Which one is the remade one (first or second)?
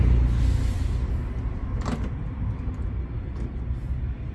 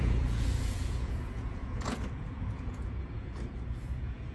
second